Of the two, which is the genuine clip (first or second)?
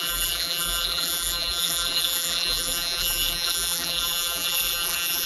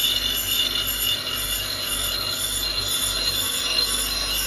second